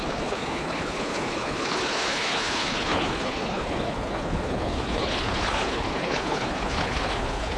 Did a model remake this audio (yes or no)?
yes